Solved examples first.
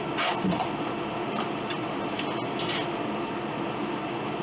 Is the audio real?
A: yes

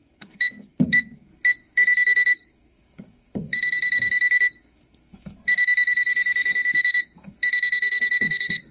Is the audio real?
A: no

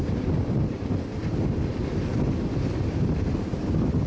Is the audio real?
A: yes